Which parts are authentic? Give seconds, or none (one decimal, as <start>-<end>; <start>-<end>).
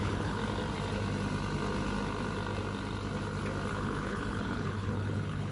0.4-3.7